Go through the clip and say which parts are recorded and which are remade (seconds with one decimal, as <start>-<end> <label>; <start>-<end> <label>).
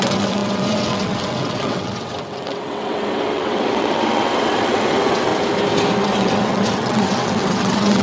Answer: 0.0-5.3 remade; 5.3-6.0 recorded; 6.0-8.0 remade